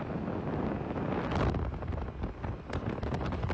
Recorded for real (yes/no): yes